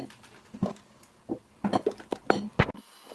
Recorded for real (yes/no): yes